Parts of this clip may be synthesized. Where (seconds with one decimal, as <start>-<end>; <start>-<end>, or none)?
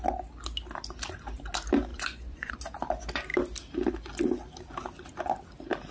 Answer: 1.9-2.5